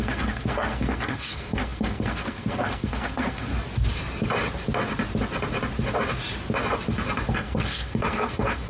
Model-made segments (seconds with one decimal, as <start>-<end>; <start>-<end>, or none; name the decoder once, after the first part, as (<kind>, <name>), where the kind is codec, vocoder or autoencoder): 0.0-3.5 (codec, SNAC); 7.3-8.7

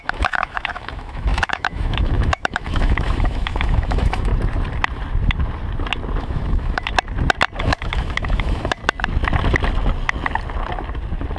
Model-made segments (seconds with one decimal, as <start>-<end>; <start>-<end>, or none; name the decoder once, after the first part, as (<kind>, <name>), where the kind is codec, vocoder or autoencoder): 0.0-4.3 (autoencoder, DAC-VAE); 6.2-6.9; 7.6-8.8

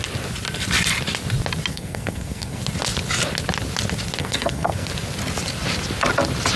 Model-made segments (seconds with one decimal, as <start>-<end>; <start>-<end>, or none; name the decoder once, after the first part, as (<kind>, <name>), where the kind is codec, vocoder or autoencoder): 1.7-2.6 (codec, SNAC); 4.2-4.9